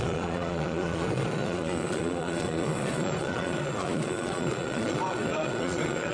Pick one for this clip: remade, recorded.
remade